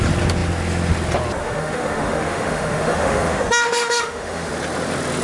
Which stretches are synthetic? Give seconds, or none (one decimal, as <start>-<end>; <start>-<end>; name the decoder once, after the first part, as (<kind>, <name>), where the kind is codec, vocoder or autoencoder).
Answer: 1.4-4.5 (autoencoder, DAC-VAE)